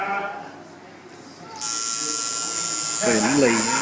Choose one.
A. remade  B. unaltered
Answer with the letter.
B